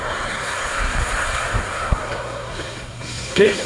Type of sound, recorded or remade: remade